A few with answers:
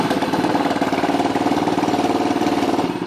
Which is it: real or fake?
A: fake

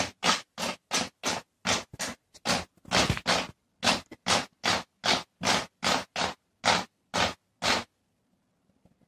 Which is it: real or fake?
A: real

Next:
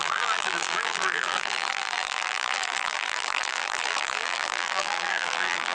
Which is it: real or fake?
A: fake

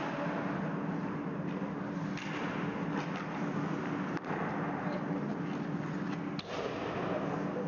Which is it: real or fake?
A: real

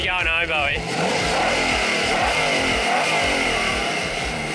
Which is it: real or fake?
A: fake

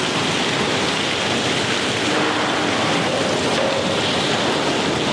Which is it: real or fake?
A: real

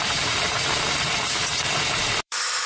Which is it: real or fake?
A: fake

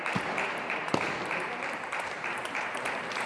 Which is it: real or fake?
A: fake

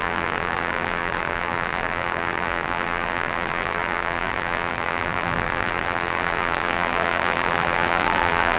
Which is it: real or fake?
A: fake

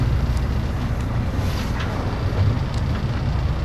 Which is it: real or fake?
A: real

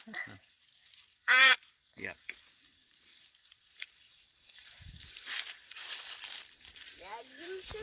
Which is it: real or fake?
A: fake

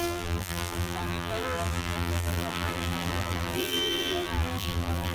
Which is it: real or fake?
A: fake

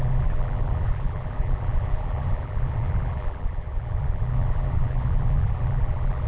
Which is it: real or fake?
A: fake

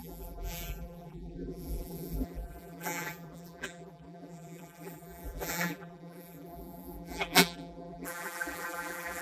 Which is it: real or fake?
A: fake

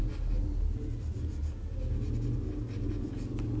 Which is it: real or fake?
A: real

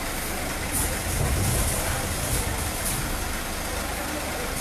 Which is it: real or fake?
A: real